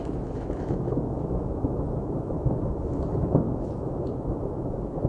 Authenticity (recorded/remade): remade